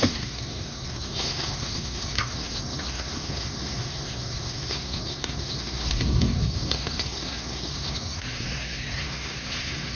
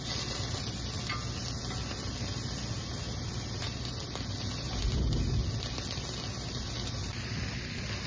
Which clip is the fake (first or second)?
first